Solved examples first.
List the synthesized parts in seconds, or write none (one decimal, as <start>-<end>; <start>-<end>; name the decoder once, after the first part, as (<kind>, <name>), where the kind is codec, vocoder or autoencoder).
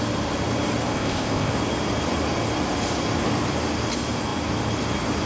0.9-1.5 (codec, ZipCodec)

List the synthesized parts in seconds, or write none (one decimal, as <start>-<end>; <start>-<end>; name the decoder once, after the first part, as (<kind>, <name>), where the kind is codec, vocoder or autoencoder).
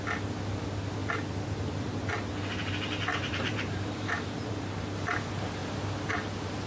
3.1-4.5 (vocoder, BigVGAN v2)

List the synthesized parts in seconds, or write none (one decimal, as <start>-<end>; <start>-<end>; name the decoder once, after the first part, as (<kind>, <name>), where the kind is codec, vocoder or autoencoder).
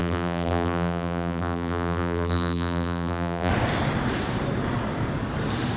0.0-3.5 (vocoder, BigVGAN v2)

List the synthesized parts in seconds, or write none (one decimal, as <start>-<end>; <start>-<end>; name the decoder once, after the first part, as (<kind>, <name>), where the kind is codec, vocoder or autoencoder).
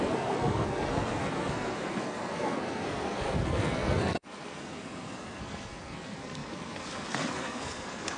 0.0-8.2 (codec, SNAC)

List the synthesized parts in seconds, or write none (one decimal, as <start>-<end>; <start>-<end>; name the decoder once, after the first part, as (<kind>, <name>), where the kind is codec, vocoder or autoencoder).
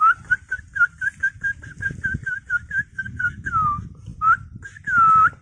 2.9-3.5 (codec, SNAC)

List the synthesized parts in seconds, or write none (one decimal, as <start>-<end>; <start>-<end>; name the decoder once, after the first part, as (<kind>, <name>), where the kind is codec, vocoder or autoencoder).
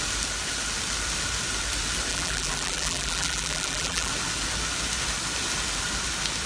2.1-4.1 (vocoder, BigVGAN v2)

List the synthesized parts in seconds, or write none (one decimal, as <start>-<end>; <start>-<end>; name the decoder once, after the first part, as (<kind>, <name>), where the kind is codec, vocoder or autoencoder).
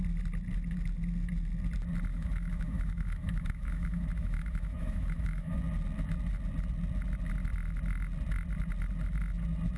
2.1-5.6 (autoencoder, DAC-VAE)